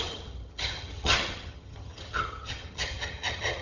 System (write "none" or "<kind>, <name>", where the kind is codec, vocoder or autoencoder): vocoder, HiFi-GAN